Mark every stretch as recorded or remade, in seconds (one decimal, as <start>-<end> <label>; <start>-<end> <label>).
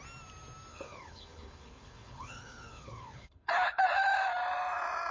0.0-0.7 recorded; 0.7-3.8 remade; 3.8-5.1 recorded